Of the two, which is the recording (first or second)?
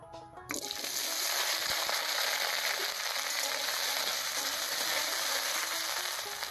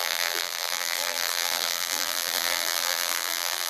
first